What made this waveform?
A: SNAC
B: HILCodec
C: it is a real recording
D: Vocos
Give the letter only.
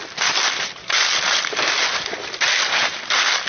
C